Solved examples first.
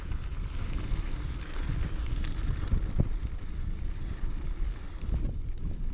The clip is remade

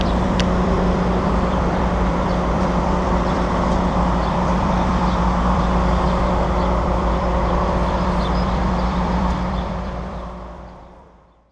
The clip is remade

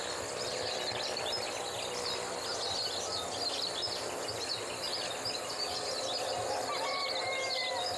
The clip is recorded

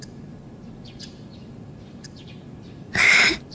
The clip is remade